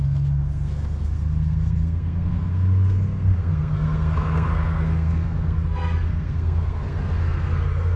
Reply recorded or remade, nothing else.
remade